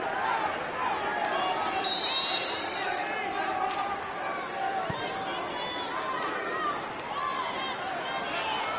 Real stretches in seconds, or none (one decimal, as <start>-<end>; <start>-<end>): 0.0-8.8

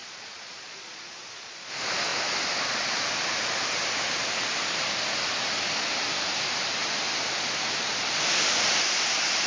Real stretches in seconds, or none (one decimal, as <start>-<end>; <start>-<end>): 1.7-9.5